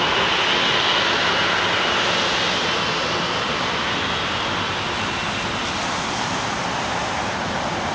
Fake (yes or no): no